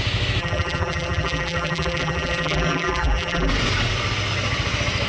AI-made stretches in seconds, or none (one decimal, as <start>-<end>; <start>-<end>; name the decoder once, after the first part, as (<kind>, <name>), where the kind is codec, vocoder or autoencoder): 0.4-3.5 (vocoder, BigVGAN v2)